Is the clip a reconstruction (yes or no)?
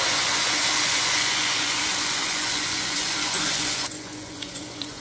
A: yes